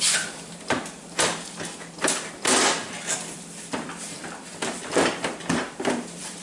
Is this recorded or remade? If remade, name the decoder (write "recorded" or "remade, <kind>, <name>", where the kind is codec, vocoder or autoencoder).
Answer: remade, vocoder, BigVGAN v2